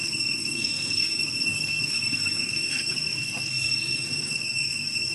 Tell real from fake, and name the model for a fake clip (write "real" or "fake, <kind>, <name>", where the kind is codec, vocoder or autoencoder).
fake, codec, SNAC